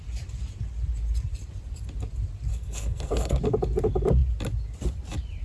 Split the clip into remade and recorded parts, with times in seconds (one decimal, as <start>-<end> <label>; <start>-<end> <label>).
0.0-2.5 recorded; 2.5-3.4 remade; 3.4-5.4 recorded